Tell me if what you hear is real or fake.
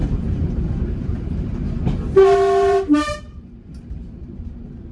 fake